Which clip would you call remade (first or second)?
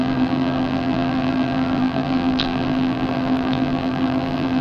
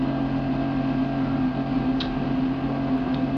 first